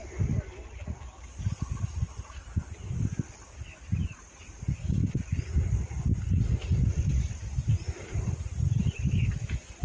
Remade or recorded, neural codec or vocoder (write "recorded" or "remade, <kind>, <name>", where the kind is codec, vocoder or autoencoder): recorded